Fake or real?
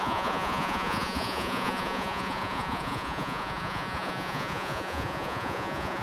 fake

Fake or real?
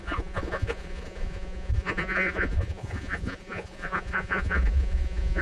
fake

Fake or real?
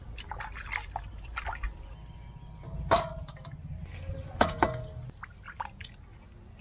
real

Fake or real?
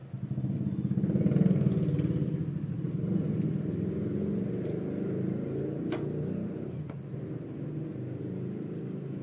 real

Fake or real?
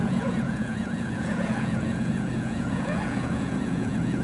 fake